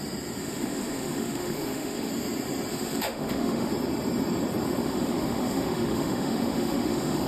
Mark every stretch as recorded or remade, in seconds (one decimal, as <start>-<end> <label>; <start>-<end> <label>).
0.0-0.4 recorded; 0.4-2.1 remade; 2.1-2.7 recorded; 2.7-3.7 remade; 3.7-4.8 recorded; 4.8-7.3 remade